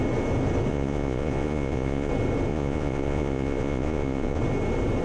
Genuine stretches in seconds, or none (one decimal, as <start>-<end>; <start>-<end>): 0.0-0.7; 2.1-2.5; 4.4-5.0